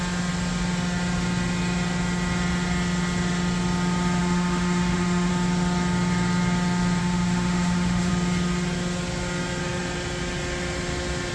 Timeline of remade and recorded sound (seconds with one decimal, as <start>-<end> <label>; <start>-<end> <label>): 0.0-4.2 recorded; 4.2-5.3 remade; 5.3-7.0 recorded; 7.0-8.1 remade; 8.1-11.3 recorded